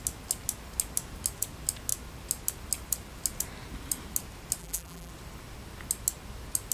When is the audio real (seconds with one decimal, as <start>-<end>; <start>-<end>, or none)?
0.0-4.6; 5.1-6.7